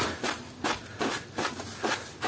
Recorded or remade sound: recorded